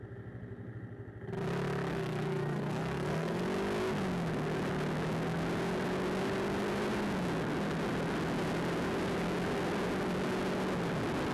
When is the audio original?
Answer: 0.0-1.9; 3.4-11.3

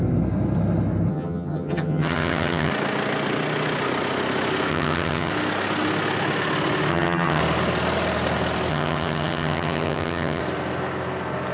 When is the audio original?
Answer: 0.0-1.1; 2.7-4.7; 5.3-6.9; 7.4-8.7; 10.4-11.5

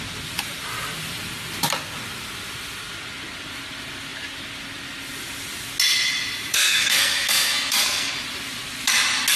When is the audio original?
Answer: 0.0-6.5; 8.1-9.4

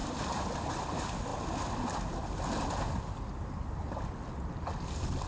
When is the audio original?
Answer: 0.6-5.3